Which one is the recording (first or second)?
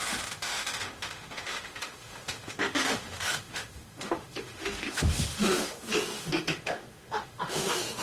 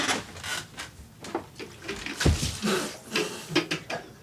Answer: second